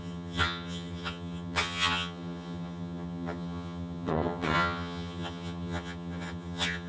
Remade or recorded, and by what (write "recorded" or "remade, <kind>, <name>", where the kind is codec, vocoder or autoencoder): remade, vocoder, HiFi-GAN